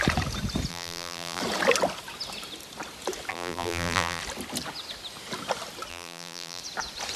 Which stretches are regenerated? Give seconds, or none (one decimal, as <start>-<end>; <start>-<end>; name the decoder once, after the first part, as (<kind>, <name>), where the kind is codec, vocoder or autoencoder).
0.7-1.4 (vocoder, BigVGAN v2); 3.3-4.2; 5.9-6.6